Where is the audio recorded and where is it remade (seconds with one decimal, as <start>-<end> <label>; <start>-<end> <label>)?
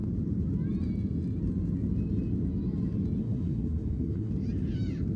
0.0-3.2 recorded; 3.2-4.3 remade; 4.3-5.2 recorded